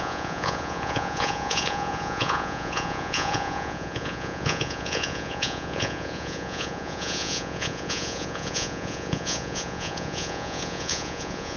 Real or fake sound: fake